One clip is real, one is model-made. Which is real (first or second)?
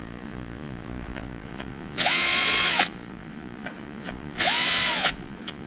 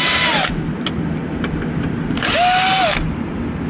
second